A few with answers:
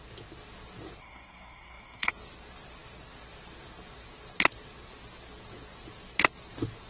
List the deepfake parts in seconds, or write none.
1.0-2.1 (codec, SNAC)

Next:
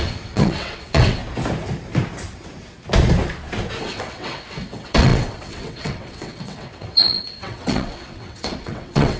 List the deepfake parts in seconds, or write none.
0.0-1.2 (vocoder, WaveNeXt); 3.8-9.2

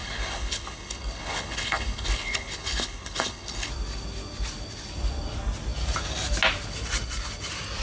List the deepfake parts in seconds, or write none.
0.0-3.7 (codec, HILCodec)

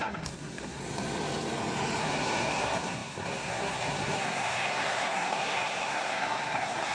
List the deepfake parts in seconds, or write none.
0.0-0.8 (codec, SNAC); 2.0-6.9

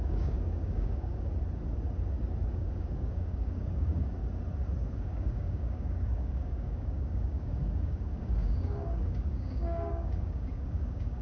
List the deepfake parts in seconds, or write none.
0.0-1.3 (codec, DAC); 2.5-4.2; 4.9-11.2

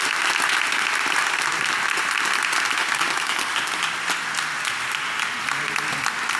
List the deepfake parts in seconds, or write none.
2.8-3.5 (codec, DAC)

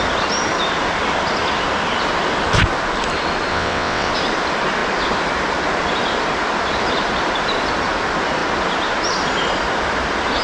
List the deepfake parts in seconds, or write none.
3.5-4.1 (vocoder, WaveNeXt)

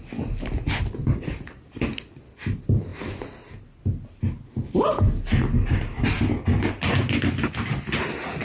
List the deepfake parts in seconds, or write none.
none